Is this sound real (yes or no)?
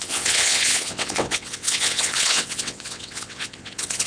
no